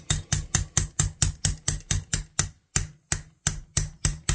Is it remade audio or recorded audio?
recorded